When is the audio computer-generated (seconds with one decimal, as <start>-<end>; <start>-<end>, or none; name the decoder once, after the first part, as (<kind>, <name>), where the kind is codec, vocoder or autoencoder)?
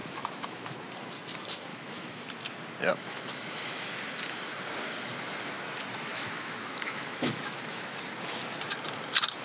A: 0.0-0.9 (autoencoder, DAC-VAE); 1.7-2.2; 2.9-3.9; 6.1-8.0